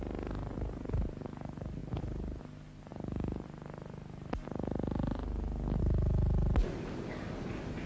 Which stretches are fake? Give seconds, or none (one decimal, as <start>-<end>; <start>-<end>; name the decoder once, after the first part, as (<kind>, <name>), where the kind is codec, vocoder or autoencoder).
none